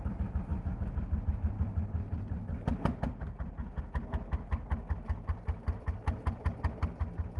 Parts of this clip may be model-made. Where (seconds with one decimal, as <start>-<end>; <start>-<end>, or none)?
none